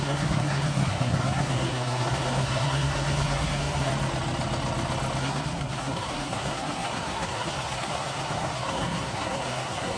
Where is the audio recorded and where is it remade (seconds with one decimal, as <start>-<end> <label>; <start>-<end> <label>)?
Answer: 0.0-3.9 remade; 3.9-5.2 recorded; 5.2-10.0 remade